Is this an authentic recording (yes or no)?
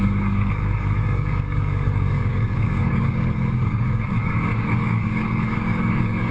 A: no